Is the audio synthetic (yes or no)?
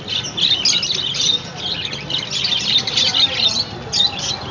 no